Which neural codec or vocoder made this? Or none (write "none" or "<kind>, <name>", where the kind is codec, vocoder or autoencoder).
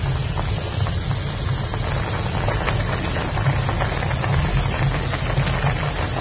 none